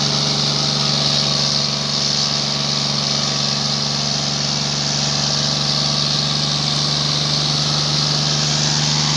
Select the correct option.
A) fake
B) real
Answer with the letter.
B